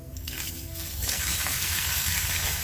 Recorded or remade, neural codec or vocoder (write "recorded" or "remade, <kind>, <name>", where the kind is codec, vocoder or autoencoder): remade, codec, SNAC